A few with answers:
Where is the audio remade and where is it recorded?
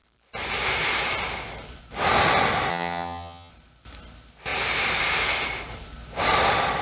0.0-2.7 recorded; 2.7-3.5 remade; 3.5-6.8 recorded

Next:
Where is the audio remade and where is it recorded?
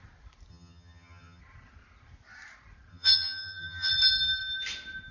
0.0-0.5 recorded; 0.5-1.4 remade; 1.4-2.9 recorded; 2.9-3.9 remade; 3.9-5.1 recorded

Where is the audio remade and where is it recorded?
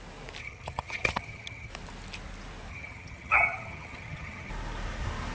0.0-0.4 recorded; 0.4-1.7 remade; 1.7-2.7 recorded; 2.7-4.5 remade; 4.5-5.3 recorded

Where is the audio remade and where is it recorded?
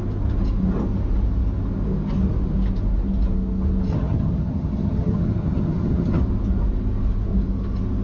0.0-3.9 recorded; 3.9-6.2 remade; 6.2-8.0 recorded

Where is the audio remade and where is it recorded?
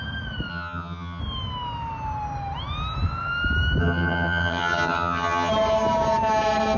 0.0-0.5 recorded; 0.5-1.2 remade; 1.2-3.8 recorded; 3.8-5.5 remade; 5.5-6.8 recorded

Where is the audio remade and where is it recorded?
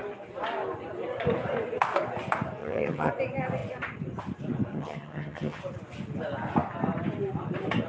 0.0-2.6 recorded; 2.6-3.1 remade; 3.1-4.7 recorded; 4.7-5.6 remade; 5.6-7.9 recorded